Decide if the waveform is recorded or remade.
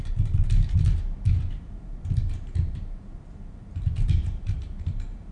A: remade